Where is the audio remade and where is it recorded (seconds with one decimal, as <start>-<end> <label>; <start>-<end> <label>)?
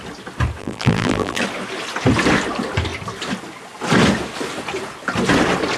0.0-0.6 recorded; 0.6-1.4 remade; 1.4-5.8 recorded